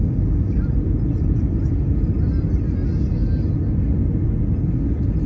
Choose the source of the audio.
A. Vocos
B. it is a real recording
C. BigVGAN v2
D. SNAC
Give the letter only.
B